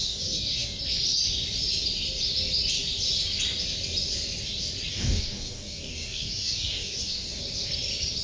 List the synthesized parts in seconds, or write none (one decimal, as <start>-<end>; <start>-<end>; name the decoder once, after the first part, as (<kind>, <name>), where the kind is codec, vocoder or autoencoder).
0.0-0.8 (codec, DAC); 4.9-7.4